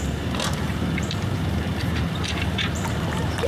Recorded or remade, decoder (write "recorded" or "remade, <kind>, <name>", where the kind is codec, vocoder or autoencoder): remade, vocoder, BigVGAN v2